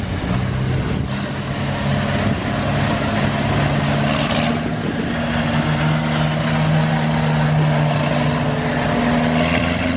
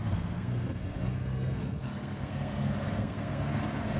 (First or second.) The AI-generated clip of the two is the second